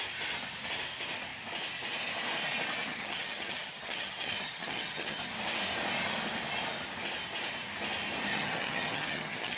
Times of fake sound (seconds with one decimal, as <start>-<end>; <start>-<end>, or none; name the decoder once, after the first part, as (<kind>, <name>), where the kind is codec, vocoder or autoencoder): 2.9-5.2 (vocoder, HiFi-GAN); 8.3-9.6